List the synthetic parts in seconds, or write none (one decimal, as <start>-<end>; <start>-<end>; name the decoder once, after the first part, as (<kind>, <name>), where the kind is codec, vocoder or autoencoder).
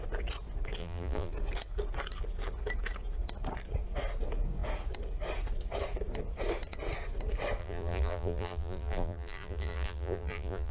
0.8-1.3 (vocoder, BigVGAN v2); 7.6-10.7